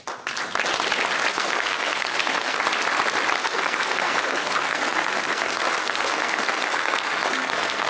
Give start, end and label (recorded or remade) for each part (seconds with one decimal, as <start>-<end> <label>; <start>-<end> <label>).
0.0-1.3 recorded; 1.3-2.6 remade; 2.6-3.4 recorded; 3.4-7.9 remade